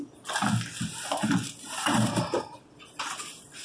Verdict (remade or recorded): recorded